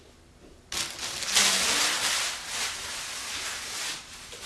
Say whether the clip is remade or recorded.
recorded